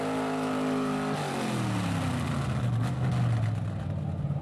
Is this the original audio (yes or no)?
yes